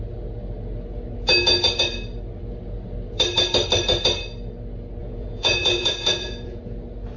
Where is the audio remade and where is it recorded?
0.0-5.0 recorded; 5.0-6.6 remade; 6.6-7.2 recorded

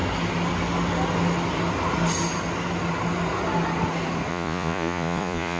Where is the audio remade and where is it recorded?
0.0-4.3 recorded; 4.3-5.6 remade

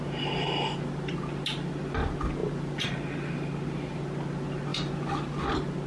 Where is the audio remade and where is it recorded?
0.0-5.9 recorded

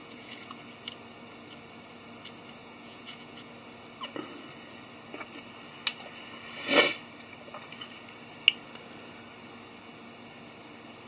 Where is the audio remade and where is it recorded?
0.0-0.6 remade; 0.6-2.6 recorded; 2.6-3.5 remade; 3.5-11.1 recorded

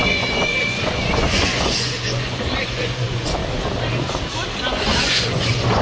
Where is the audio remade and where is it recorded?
0.0-3.4 remade; 3.4-4.6 recorded; 4.6-5.8 remade